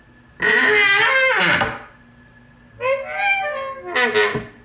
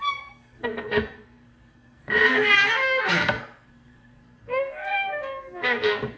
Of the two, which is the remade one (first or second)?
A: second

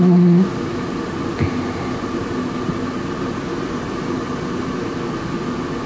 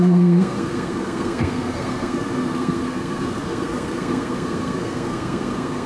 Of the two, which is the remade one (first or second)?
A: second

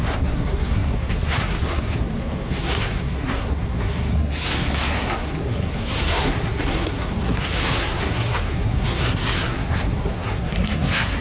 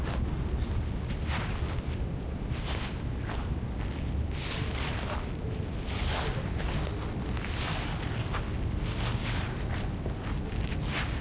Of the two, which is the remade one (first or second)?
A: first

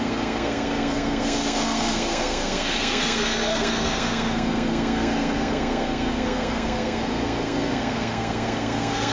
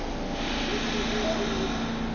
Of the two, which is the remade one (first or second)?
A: first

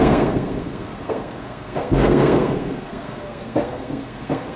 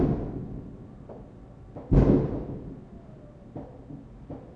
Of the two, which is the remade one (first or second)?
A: first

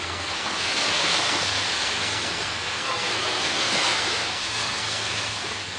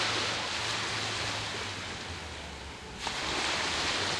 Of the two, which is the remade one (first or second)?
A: first